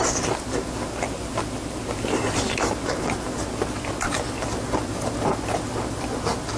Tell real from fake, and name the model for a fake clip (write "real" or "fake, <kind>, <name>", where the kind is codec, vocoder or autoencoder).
real